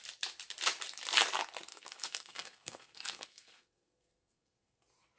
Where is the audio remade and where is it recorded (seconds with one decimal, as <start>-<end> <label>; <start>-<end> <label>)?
0.0-1.7 recorded; 1.7-4.8 remade; 4.8-5.2 recorded